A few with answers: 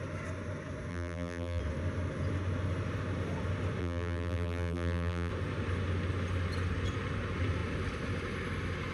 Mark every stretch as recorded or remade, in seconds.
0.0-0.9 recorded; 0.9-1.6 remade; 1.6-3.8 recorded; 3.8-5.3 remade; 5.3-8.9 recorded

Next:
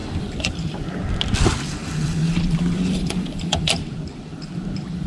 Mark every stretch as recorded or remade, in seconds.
0.0-0.5 remade; 0.5-1.8 recorded; 1.8-5.1 remade

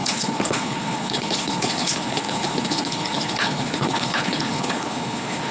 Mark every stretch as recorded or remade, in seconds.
0.0-5.5 remade

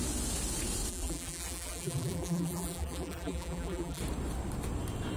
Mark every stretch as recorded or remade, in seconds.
0.0-0.9 recorded; 0.9-4.0 remade; 4.0-5.2 recorded

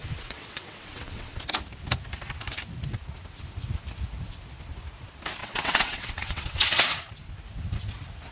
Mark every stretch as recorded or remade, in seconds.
0.0-1.4 remade; 1.4-5.4 recorded; 5.4-6.8 remade; 6.8-8.3 recorded

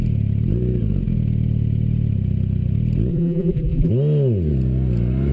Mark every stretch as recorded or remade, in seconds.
0.0-3.1 recorded; 3.1-3.9 remade; 3.9-5.3 recorded

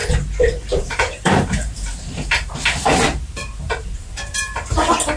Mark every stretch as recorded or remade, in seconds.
0.0-0.8 recorded; 0.8-5.2 remade

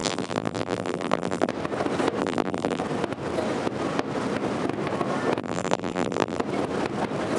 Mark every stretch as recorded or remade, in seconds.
0.0-1.5 remade; 1.5-2.2 recorded; 2.2-2.8 remade; 2.8-5.4 recorded; 5.4-6.4 remade; 6.4-7.4 recorded